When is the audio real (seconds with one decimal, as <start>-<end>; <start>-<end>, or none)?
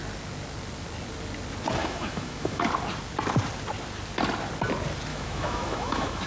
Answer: 0.0-1.8; 2.6-5.1